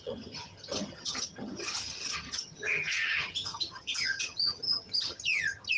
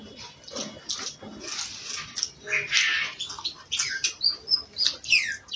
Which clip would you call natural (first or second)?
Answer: second